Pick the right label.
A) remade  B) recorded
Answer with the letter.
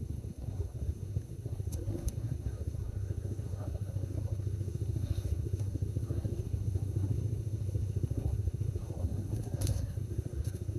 A